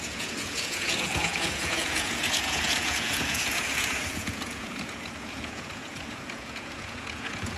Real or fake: fake